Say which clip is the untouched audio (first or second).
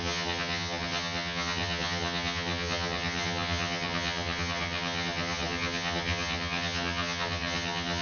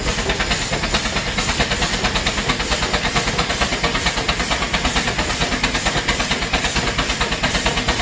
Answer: second